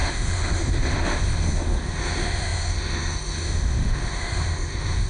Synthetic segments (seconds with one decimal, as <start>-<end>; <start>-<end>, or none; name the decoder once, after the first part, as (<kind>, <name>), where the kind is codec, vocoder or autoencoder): 0.0-5.1 (autoencoder, DAC-VAE)